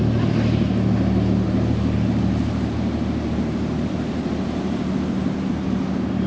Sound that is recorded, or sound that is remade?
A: recorded